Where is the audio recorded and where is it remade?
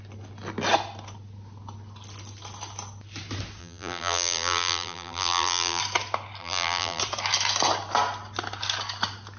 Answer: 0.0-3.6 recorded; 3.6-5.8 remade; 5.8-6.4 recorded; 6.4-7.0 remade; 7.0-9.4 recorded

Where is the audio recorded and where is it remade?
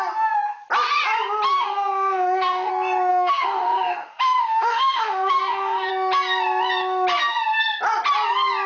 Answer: 0.0-1.5 recorded; 1.5-2.7 remade; 2.7-3.1 recorded; 3.1-5.9 remade; 5.9-8.7 recorded